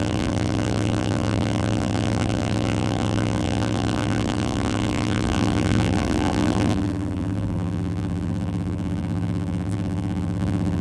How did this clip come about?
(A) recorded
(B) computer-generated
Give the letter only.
B